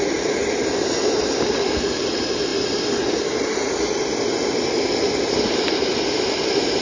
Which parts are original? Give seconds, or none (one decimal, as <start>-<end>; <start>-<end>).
0.4-1.4; 2.5-5.3

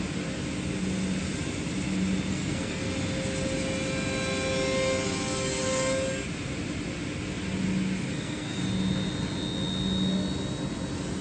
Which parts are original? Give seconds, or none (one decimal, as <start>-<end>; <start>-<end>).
0.0-2.3; 2.9-8.1; 8.6-11.2

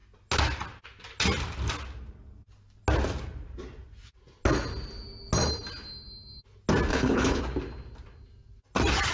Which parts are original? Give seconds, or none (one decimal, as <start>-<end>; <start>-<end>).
0.0-6.9; 7.4-9.1

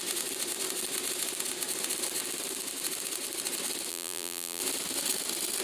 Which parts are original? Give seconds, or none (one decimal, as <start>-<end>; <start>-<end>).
0.0-3.9; 4.6-5.6

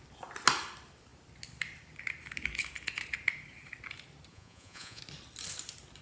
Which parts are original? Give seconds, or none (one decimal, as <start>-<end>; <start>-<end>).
0.0-4.3; 5.0-6.0

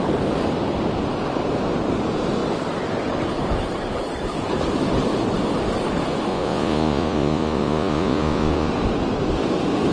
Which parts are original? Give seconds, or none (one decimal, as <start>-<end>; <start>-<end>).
0.0-6.3; 8.7-9.9

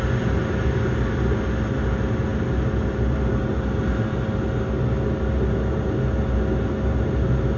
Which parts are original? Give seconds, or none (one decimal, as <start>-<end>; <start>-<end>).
0.0-7.6

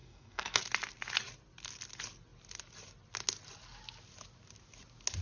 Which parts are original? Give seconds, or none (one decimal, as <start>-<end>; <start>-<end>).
0.6-5.2